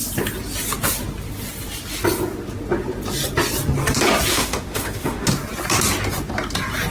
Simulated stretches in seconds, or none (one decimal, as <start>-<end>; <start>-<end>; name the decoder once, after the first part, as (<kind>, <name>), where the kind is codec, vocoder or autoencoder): 4.3-5.3 (autoencoder, DAC-VAE)